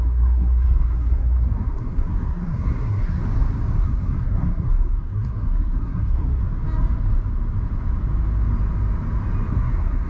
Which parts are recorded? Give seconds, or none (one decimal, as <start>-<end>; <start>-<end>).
3.2-3.8; 6.4-9.5